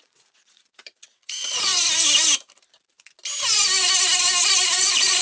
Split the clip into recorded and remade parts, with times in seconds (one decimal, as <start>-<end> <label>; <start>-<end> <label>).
0.0-1.7 remade; 1.7-4.8 recorded; 4.8-5.2 remade